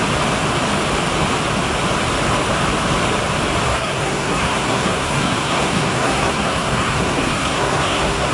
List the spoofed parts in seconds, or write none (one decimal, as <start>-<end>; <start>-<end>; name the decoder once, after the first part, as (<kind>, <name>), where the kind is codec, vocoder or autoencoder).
3.7-8.3 (codec, SNAC)